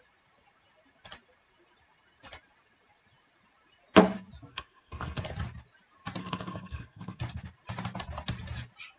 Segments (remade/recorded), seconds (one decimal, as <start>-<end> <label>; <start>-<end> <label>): 0.0-4.5 recorded; 4.5-5.2 remade; 5.2-6.2 recorded; 6.2-7.2 remade; 7.2-9.0 recorded